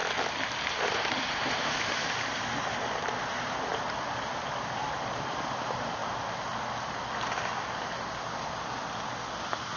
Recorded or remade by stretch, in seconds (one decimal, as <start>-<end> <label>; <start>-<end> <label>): 0.0-0.7 recorded; 0.7-6.0 remade; 6.0-9.8 recorded